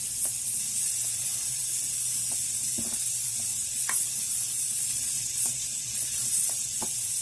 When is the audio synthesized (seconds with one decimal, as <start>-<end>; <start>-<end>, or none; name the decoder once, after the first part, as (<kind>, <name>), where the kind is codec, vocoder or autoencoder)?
0.0-0.9 (vocoder, Vocos); 3.5-6.8